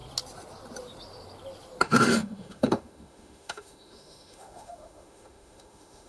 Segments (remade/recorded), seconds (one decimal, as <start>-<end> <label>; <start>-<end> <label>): 0.0-1.8 recorded; 1.8-6.1 remade